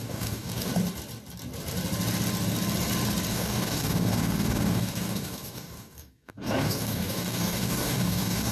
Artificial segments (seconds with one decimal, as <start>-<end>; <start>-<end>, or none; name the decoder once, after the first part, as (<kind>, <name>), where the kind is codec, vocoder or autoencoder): 0.0-0.7 (codec, DAC); 3.3-8.5